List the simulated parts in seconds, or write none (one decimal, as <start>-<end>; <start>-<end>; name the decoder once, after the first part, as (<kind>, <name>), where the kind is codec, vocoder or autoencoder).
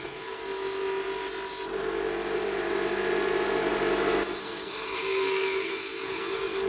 0.0-0.4 (codec, SNAC); 4.4-6.7